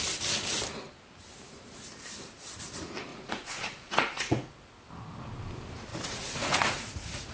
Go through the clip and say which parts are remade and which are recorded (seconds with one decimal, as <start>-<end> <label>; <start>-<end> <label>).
0.0-3.1 recorded; 3.1-4.5 remade; 4.5-5.9 recorded; 5.9-7.3 remade